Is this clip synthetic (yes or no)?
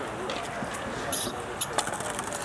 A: no